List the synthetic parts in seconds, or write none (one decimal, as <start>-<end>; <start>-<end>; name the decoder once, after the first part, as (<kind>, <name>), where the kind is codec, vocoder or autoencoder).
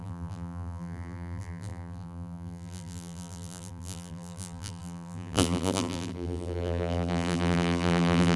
0.0-8.4 (vocoder, BigVGAN v2)